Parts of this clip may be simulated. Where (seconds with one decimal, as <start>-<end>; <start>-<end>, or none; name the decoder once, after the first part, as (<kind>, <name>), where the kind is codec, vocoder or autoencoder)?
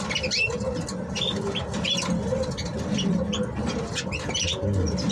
2.7-3.8 (vocoder, BigVGAN v2)